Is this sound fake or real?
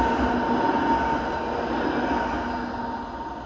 real